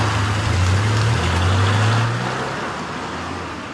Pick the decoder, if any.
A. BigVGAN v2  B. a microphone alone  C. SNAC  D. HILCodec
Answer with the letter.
B